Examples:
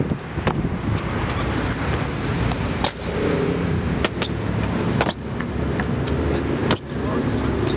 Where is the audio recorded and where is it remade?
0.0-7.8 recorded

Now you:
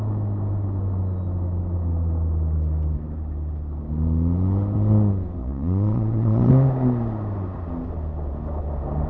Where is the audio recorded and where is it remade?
0.0-5.4 recorded; 5.4-6.5 remade; 6.5-9.1 recorded

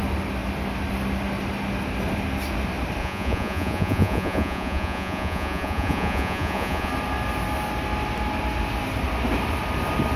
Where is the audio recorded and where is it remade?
0.0-3.0 recorded; 3.0-6.9 remade; 6.9-10.2 recorded

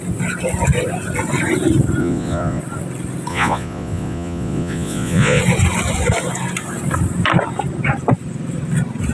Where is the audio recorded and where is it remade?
0.0-2.0 recorded; 2.0-2.6 remade; 2.6-3.3 recorded; 3.3-5.4 remade; 5.4-9.1 recorded

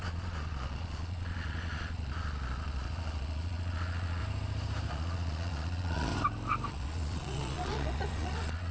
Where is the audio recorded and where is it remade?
0.0-4.2 remade; 4.2-4.9 recorded; 4.9-6.1 remade; 6.1-6.7 recorded; 6.7-8.7 remade

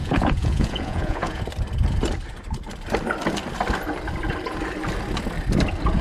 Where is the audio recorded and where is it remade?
0.0-1.4 remade; 1.4-6.0 recorded

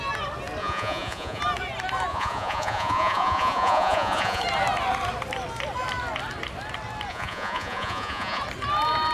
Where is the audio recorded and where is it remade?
0.0-0.6 recorded; 0.6-1.4 remade; 1.4-2.1 recorded; 2.1-4.4 remade; 4.4-7.1 recorded; 7.1-8.4 remade; 8.4-9.1 recorded

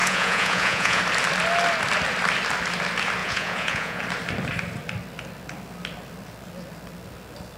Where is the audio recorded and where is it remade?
0.0-1.0 remade; 1.0-3.2 recorded; 3.2-4.0 remade; 4.0-7.6 recorded